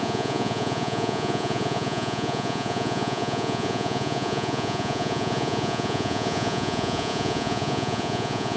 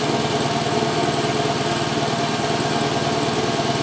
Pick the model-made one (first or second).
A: first